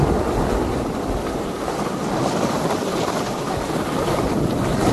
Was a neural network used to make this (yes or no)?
no